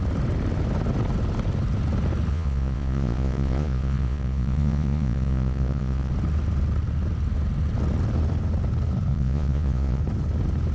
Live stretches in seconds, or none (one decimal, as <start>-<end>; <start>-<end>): 0.0-2.3; 6.1-9.1; 10.0-10.7